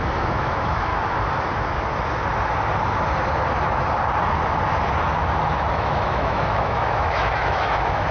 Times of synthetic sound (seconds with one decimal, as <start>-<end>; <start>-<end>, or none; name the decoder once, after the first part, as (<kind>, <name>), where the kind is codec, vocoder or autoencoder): 0.0-0.9 (autoencoder, DAC-VAE); 5.7-8.1

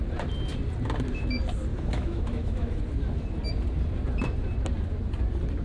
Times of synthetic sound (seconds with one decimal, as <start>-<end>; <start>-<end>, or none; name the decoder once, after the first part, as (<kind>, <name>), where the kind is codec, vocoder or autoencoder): 1.7-2.8 (autoencoder, DAC-VAE)